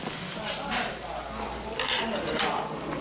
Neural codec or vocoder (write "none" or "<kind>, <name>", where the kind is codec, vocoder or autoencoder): none